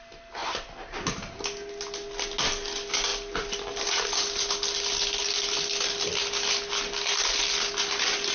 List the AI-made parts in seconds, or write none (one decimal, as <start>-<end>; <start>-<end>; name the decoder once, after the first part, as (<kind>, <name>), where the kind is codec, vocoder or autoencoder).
none